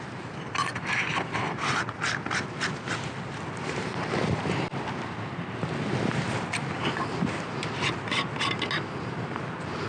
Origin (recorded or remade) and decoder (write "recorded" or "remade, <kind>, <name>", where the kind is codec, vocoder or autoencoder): recorded